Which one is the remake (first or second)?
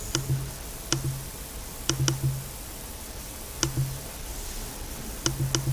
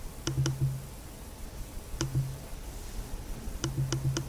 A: second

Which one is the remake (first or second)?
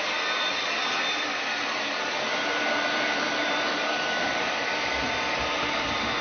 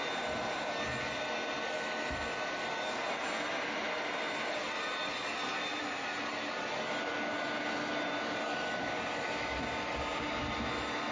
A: first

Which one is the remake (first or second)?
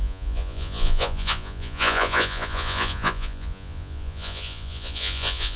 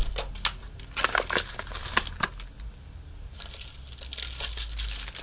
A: first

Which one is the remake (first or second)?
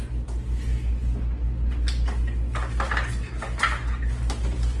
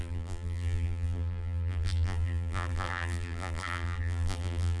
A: second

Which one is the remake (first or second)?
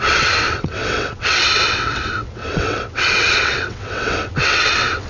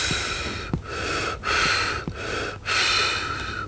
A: first